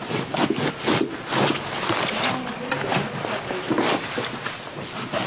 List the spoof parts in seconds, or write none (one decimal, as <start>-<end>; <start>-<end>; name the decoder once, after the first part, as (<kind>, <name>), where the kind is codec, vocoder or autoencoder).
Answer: none